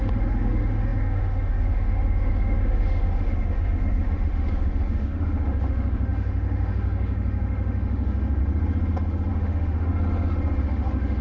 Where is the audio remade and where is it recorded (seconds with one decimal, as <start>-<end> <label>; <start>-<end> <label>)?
0.0-8.4 remade; 8.4-9.3 recorded; 9.3-9.9 remade; 9.9-10.6 recorded; 10.6-11.2 remade